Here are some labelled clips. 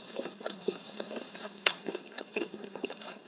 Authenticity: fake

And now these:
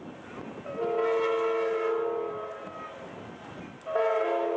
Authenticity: real